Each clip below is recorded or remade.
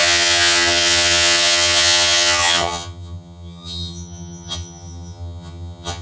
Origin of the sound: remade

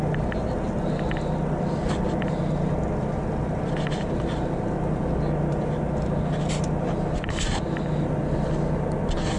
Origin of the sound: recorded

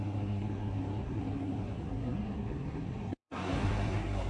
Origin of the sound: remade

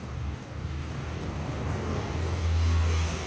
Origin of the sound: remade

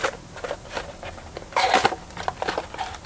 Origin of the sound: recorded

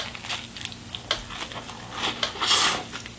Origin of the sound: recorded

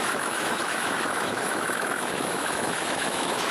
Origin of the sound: remade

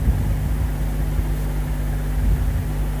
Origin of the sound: recorded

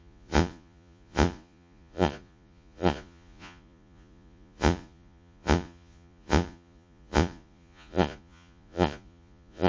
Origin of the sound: remade